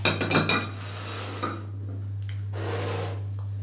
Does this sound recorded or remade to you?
recorded